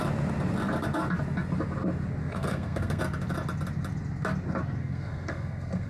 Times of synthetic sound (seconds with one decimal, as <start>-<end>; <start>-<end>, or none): 2.2-3.0; 4.8-5.9